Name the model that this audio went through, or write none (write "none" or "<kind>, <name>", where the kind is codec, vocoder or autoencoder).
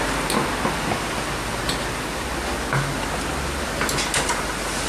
none